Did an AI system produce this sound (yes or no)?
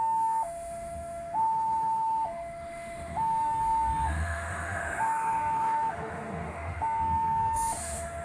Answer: yes